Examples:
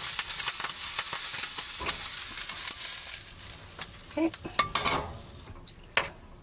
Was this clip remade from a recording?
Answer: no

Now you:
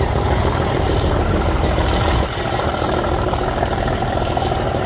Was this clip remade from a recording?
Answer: yes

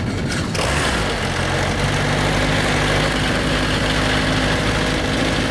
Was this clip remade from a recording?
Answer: no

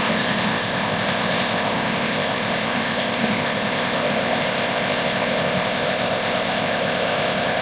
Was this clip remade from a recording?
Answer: yes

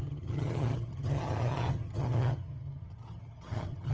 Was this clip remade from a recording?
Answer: yes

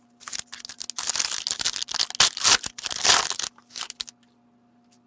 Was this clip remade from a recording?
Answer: no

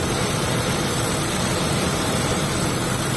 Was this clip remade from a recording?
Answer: no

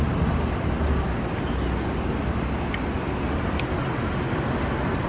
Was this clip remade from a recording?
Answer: no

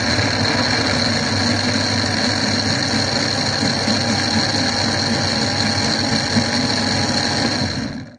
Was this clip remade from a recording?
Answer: no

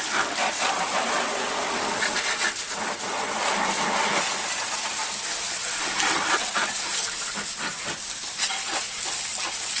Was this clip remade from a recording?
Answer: no